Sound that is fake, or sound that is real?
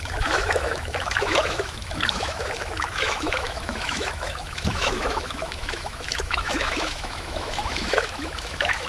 fake